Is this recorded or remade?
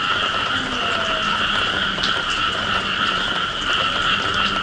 recorded